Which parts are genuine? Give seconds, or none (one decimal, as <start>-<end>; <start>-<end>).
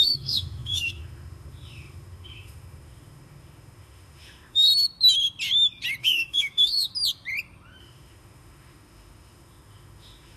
4.7-6.0; 6.9-7.8